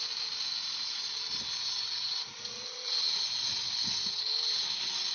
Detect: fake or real real